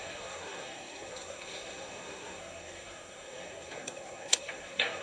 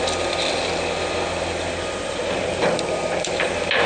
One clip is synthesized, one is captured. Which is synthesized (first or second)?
first